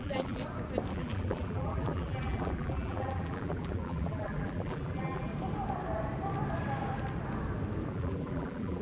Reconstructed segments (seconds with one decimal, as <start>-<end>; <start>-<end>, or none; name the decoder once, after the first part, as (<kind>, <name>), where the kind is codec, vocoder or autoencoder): 0.0-0.4 (vocoder, BigVGAN v2); 0.9-5.3; 7.9-8.8